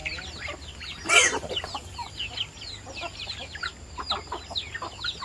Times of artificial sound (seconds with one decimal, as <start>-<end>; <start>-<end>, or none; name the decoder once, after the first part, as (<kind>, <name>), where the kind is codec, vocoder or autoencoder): 0.0-3.1 (vocoder, BigVGAN v2)